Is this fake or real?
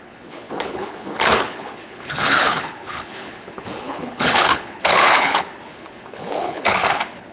fake